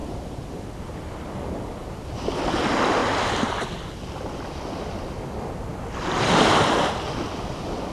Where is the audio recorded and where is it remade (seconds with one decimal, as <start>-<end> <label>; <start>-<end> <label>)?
0.0-7.9 recorded